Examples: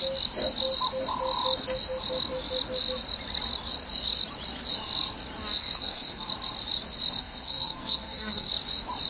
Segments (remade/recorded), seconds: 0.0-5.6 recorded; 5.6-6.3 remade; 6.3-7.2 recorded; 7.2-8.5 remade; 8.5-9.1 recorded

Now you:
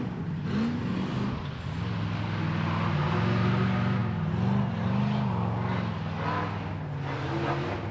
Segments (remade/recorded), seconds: 0.0-7.9 recorded